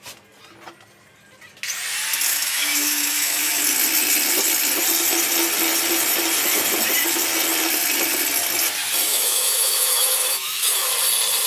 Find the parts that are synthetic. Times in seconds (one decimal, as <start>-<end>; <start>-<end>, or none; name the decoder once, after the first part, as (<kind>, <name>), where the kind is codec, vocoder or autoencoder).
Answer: 2.3-3.6 (autoencoder, DAC-VAE); 9.1-10.9